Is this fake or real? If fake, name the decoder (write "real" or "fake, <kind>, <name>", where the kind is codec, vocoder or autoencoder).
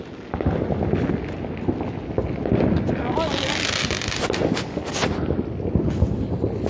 real